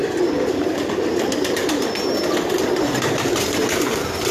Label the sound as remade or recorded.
recorded